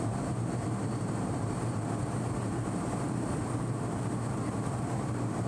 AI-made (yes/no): yes